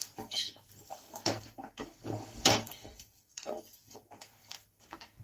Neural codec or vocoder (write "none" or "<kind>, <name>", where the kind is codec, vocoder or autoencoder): codec, SNAC